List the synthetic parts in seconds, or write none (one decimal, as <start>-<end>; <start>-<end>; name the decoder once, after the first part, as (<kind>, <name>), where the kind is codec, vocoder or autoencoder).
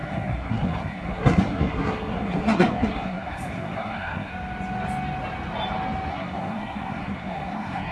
0.0-4.3 (codec, SNAC); 6.1-7.9